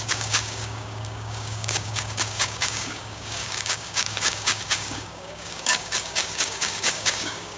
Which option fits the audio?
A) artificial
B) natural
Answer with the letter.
A